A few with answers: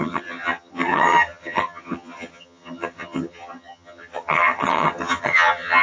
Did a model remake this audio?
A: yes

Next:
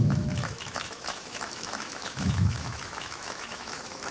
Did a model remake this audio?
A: yes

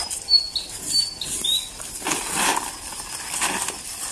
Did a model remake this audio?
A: no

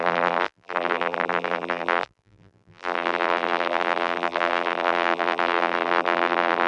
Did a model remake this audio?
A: yes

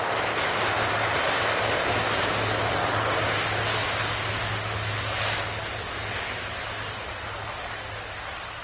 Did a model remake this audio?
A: no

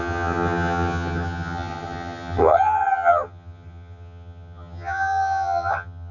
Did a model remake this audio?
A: yes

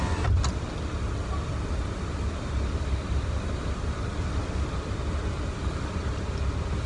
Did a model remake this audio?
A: no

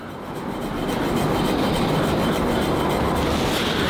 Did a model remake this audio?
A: no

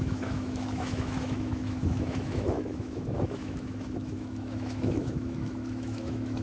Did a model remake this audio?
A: yes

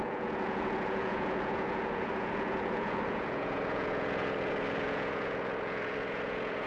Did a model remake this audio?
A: yes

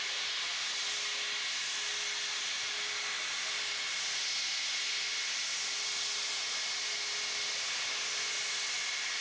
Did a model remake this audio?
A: no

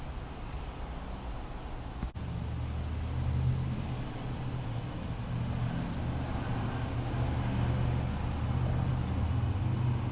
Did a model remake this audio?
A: no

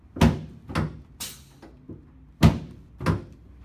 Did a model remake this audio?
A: no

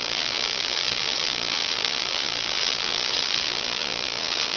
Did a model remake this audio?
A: yes